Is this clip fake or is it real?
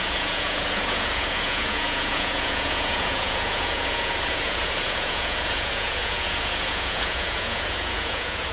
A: fake